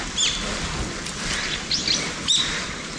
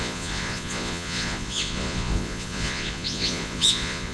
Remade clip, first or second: second